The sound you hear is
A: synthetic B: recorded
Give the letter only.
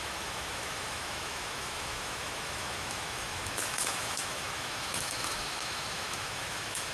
A